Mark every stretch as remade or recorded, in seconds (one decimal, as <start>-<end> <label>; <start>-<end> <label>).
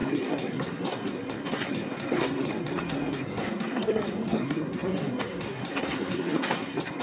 0.0-7.0 remade